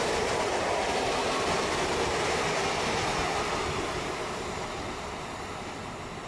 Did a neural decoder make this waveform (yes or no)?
no